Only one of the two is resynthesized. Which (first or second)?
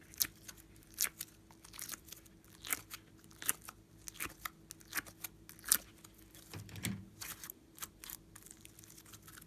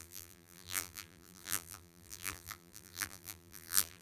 second